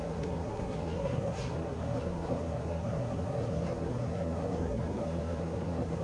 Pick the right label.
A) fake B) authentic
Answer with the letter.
A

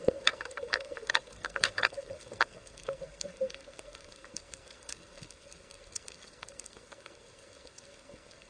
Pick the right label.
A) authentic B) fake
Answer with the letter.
B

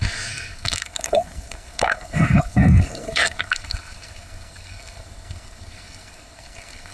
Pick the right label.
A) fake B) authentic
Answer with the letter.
A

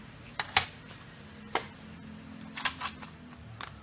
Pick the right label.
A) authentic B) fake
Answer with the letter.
A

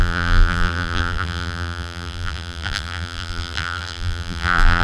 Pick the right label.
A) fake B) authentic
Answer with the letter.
A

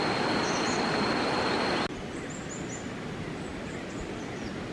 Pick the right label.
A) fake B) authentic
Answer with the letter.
B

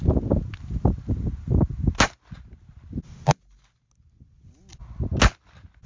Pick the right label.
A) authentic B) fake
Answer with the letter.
A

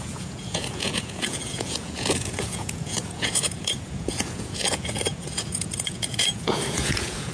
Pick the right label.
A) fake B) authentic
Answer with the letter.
A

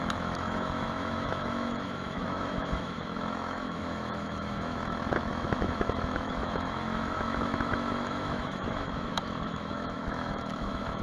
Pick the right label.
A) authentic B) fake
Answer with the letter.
B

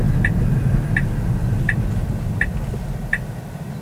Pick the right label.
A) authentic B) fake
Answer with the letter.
A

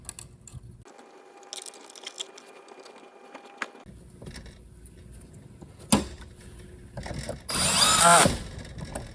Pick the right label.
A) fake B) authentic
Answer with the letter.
B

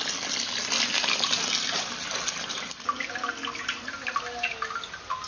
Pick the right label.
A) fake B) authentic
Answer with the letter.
B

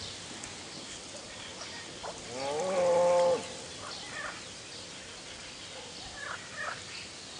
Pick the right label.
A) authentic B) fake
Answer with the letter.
A